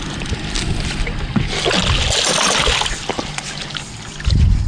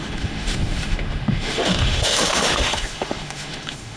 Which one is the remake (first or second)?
second